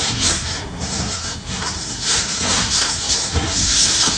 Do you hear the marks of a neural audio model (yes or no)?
yes